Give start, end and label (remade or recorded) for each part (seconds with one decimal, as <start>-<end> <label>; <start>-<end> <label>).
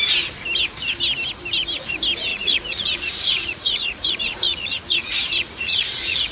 0.0-2.3 recorded; 2.3-6.3 remade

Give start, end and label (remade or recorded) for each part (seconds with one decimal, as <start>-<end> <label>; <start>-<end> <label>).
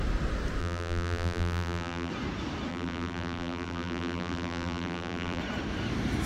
0.0-0.6 recorded; 0.6-2.1 remade; 2.1-2.7 recorded; 2.7-5.4 remade; 5.4-6.3 recorded